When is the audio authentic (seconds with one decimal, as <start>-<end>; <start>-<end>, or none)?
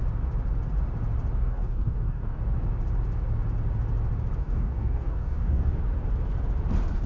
0.0-1.4; 2.4-4.4; 5.8-7.1